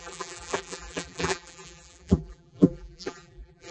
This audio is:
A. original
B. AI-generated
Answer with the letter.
B